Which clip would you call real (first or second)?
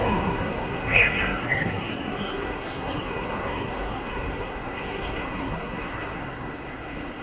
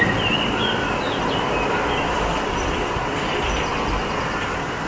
second